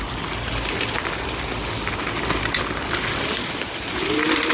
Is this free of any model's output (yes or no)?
yes